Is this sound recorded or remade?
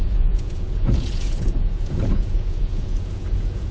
remade